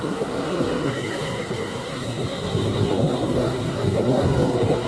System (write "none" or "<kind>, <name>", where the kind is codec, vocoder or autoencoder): codec, SNAC